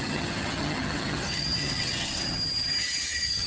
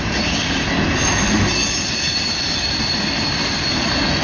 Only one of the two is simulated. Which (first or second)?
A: first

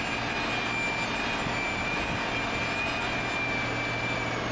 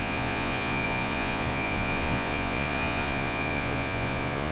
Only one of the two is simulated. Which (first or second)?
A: second